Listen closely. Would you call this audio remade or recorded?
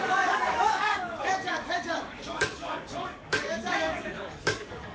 remade